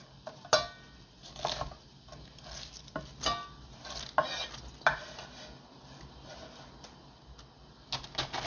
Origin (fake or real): real